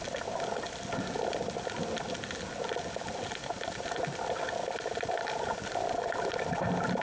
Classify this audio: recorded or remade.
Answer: recorded